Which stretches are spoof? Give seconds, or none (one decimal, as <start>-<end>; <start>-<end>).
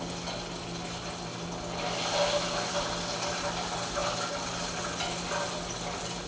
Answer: none